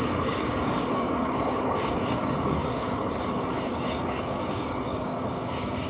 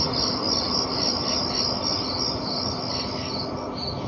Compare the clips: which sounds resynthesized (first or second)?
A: first